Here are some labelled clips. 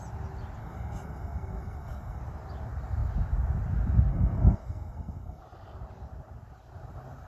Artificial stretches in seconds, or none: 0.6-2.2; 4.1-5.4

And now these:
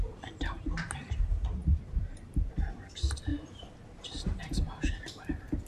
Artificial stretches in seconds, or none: 1.6-2.5; 3.3-4.4

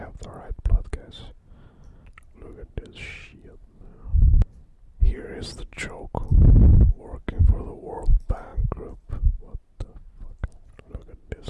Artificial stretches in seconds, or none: none

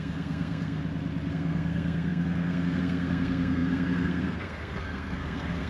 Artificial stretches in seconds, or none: 0.0-0.8; 1.3-5.7

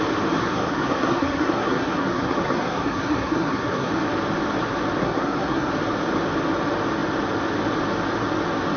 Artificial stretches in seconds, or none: 0.4-3.9; 5.0-5.7